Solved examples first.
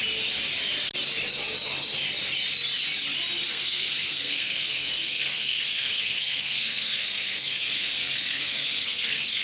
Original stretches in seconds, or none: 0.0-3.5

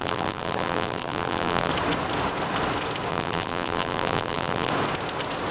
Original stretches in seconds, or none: 1.7-3.1; 4.7-5.5

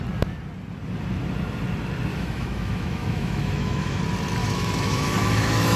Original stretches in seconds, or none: 0.0-2.1; 4.0-4.4

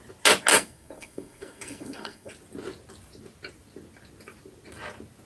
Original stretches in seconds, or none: 0.0-0.5; 2.3-5.3

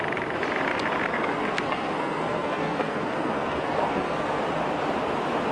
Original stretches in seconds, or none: 0.0-1.1; 4.4-5.5

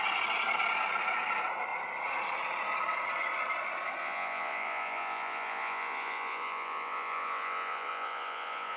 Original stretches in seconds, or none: 0.0-4.0

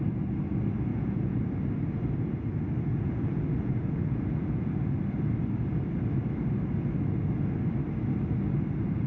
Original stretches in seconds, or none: 0.0-0.9; 1.4-2.9; 4.7-9.1

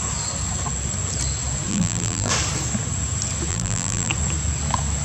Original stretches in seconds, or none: 0.0-1.7; 2.3-3.5; 4.1-5.0